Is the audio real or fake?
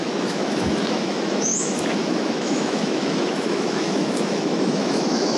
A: fake